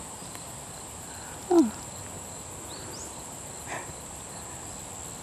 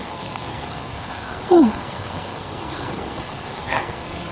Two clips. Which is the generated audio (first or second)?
second